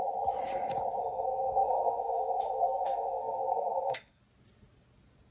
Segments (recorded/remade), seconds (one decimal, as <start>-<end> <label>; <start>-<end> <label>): 0.0-1.0 recorded; 1.0-4.2 remade; 4.2-5.3 recorded